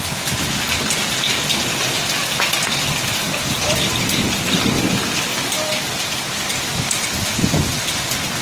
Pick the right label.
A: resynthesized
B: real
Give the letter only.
B